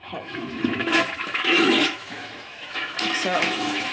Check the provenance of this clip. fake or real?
fake